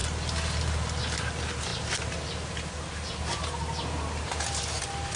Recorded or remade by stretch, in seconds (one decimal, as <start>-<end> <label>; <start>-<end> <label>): 0.0-5.2 recorded